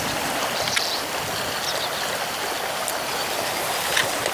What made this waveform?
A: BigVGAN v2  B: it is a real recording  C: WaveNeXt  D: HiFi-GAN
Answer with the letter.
B